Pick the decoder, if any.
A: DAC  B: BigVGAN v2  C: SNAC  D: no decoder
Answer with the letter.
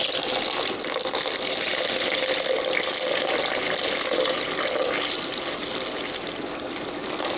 D